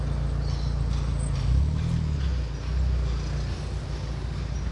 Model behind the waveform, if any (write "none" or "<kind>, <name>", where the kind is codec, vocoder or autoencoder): none